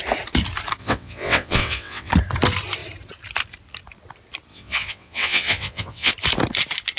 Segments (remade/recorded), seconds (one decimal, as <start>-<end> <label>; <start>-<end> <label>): 0.0-0.8 recorded; 0.8-2.1 remade; 2.1-4.5 recorded; 4.5-6.1 remade; 6.1-7.0 recorded